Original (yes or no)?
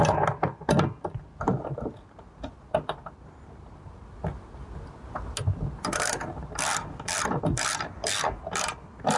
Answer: yes